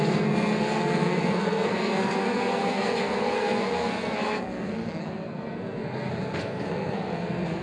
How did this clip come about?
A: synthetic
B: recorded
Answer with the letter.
A